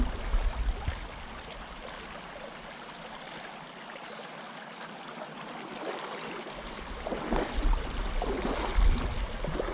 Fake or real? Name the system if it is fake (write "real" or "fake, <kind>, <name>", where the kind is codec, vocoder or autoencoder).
real